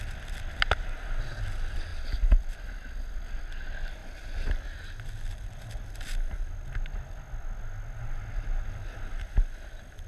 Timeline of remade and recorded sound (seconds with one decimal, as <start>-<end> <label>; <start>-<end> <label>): 0.0-10.1 recorded